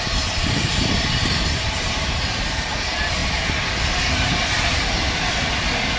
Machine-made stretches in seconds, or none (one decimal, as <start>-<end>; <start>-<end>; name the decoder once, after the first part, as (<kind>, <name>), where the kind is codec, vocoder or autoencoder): 0.0-3.2 (vocoder, BigVGAN v2)